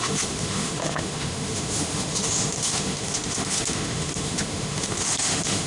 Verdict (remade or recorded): remade